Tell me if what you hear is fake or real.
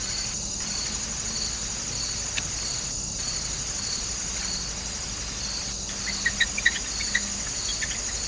real